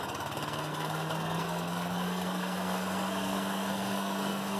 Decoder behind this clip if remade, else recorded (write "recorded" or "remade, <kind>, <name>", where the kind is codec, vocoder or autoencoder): remade, codec, SNAC